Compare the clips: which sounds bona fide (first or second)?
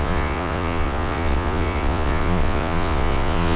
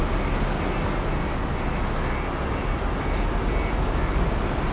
second